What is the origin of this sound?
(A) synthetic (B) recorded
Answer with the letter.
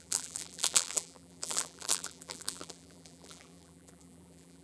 A